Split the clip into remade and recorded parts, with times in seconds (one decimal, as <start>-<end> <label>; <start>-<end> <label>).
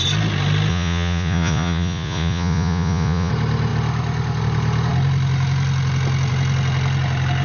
0.0-0.7 recorded; 0.7-3.3 remade; 3.3-7.4 recorded